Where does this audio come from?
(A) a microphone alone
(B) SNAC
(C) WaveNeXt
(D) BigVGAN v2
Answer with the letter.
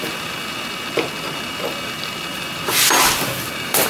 A